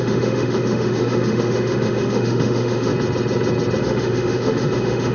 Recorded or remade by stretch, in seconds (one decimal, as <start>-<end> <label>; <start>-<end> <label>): 0.0-2.9 remade; 2.9-3.8 recorded; 3.8-5.1 remade